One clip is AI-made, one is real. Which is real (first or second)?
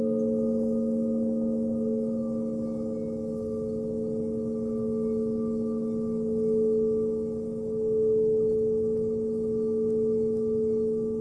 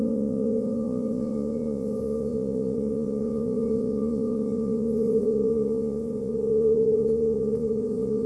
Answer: first